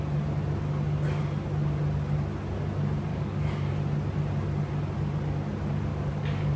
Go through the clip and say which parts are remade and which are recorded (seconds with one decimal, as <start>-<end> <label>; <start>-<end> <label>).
0.0-3.1 recorded; 3.1-3.7 remade; 3.7-5.9 recorded; 5.9-6.6 remade